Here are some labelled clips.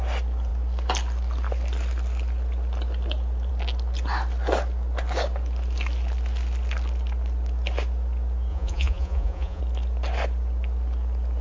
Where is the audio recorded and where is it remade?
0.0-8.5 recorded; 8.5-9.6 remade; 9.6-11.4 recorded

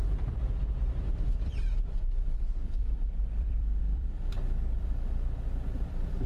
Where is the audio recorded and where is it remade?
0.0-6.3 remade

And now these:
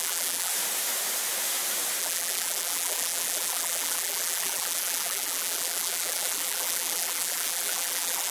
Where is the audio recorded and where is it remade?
0.0-0.5 remade; 0.5-2.0 recorded; 2.0-8.3 remade